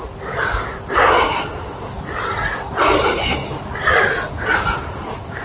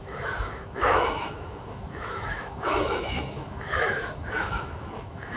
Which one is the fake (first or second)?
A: second